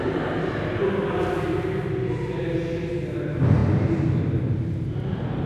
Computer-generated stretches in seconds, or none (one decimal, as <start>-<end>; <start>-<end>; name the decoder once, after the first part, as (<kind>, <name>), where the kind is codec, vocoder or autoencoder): 0.0-0.8 (vocoder, BigVGAN v2); 2.9-3.6; 4.4-5.5